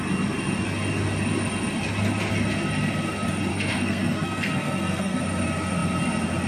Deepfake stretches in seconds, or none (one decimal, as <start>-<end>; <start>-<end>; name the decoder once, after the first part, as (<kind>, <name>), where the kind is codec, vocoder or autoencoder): 3.5-5.2 (codec, SNAC)